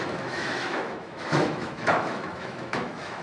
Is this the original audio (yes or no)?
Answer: no